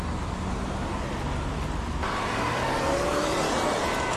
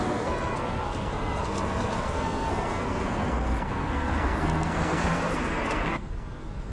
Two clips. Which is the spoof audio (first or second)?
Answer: second